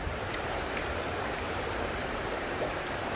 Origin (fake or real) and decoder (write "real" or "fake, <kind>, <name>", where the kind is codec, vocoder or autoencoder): fake, vocoder, BigVGAN v2